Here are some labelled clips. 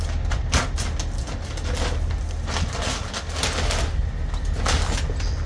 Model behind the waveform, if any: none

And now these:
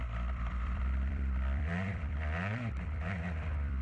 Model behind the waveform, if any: vocoder, BigVGAN v2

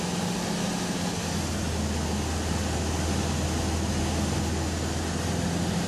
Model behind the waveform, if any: none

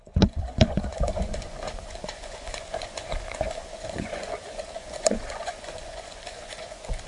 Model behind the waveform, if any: vocoder, Vocos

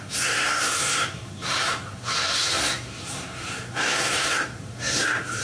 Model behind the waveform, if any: codec, SNAC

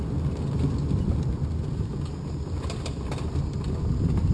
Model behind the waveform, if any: none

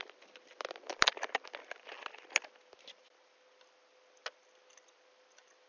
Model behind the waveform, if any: none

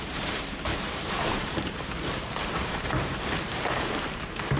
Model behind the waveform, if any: vocoder, BigVGAN v2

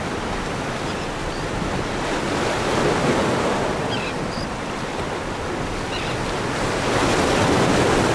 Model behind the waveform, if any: none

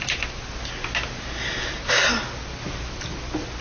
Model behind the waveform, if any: none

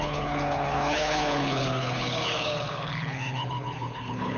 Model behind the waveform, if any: codec, HILCodec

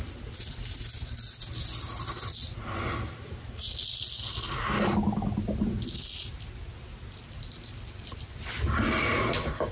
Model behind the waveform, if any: none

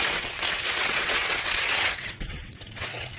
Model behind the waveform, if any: vocoder, WaveNeXt